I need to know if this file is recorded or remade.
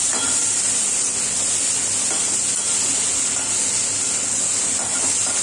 recorded